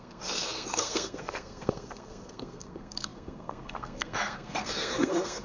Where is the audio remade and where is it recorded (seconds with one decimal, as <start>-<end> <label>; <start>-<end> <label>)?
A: 0.0-5.4 remade